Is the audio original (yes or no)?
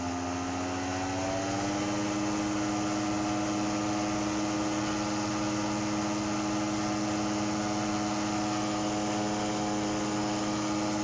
yes